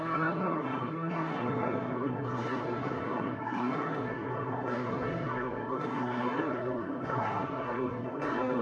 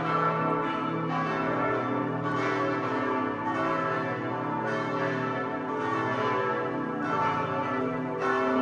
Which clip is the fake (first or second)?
first